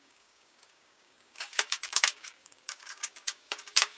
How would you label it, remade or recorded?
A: remade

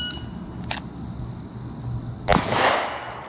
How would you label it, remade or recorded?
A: recorded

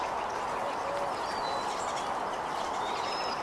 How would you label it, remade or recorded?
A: recorded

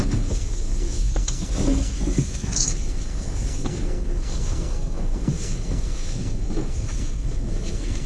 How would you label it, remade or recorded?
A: remade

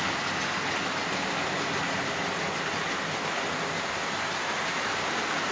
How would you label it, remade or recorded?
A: recorded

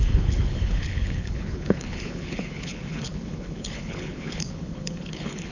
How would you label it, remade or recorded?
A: remade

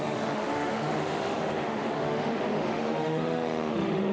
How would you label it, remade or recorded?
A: remade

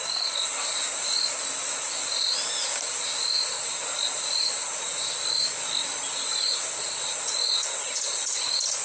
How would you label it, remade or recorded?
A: recorded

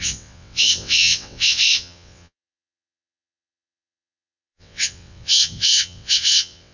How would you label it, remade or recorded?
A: remade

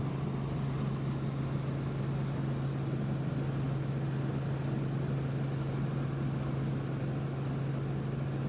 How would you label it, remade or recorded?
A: recorded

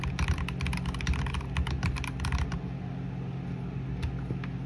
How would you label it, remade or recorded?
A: recorded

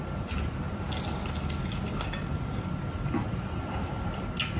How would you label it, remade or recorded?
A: recorded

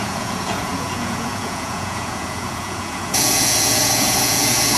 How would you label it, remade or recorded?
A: remade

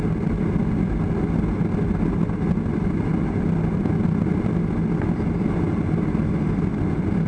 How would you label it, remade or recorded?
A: recorded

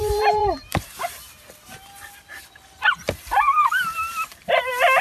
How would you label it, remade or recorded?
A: remade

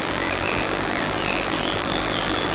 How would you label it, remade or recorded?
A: remade